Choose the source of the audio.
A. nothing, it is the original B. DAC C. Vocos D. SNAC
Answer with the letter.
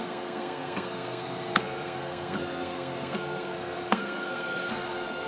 D